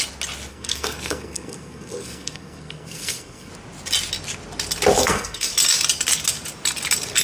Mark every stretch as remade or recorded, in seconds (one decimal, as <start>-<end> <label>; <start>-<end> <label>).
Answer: 0.0-0.5 recorded; 0.5-3.5 remade; 3.5-5.0 recorded; 5.0-5.5 remade; 5.5-7.2 recorded